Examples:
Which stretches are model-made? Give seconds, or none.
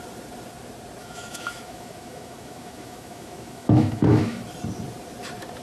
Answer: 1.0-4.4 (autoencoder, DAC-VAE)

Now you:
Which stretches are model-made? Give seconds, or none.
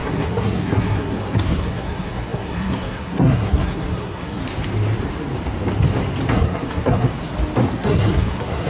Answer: 0.0-4.4 (codec, SNAC); 6.3-7.1; 7.7-8.7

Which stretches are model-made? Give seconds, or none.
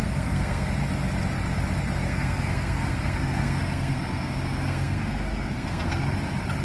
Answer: 0.0-0.7 (codec, SNAC); 2.0-6.0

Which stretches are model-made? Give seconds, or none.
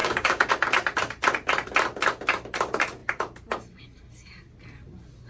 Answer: 0.0-0.5 (codec, DAC)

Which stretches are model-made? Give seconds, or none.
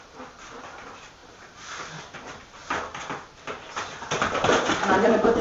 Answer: 1.2-2.0 (vocoder, BigVGAN v2)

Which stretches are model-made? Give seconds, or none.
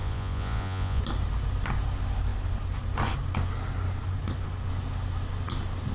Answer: 0.0-1.0 (vocoder, Vocos)